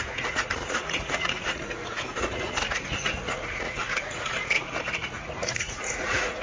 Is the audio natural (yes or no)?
no